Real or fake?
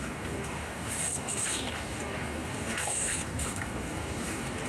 fake